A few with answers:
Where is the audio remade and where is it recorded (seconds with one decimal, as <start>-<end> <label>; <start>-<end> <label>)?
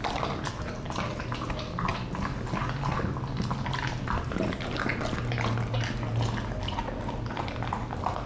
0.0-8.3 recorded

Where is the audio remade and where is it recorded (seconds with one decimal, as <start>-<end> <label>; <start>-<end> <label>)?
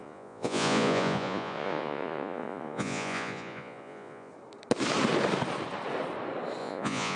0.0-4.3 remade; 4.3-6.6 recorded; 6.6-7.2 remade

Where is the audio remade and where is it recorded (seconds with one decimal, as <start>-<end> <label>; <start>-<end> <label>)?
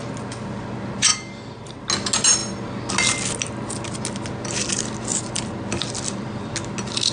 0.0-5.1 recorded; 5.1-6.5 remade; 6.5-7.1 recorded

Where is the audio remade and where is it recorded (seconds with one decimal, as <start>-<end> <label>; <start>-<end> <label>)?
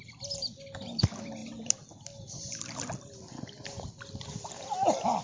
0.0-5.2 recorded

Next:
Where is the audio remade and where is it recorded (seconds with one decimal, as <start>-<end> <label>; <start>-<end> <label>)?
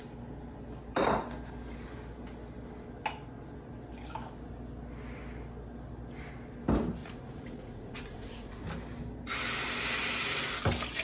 0.0-7.0 recorded; 7.0-8.6 remade; 8.6-11.0 recorded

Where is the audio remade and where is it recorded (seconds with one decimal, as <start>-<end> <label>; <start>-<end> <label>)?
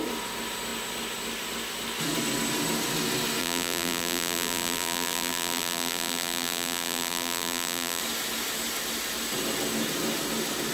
0.0-3.4 recorded; 3.4-8.0 remade; 8.0-10.7 recorded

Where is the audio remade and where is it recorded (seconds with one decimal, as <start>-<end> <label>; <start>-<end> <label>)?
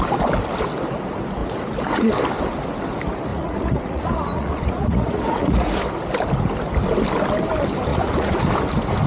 0.0-1.4 recorded; 1.4-2.1 remade; 2.1-3.3 recorded; 3.3-5.8 remade; 5.8-7.9 recorded; 7.9-8.4 remade; 8.4-9.1 recorded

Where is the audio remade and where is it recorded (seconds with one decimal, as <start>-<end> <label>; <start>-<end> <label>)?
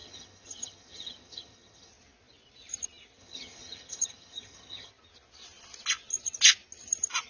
0.0-1.9 remade; 1.9-3.2 recorded; 3.2-4.9 remade; 4.9-7.3 recorded